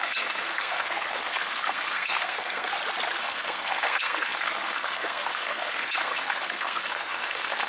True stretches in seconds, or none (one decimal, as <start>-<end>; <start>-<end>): 2.7-3.2